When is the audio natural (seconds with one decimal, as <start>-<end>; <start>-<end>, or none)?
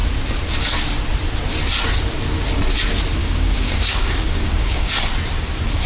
0.0-3.2; 4.9-5.9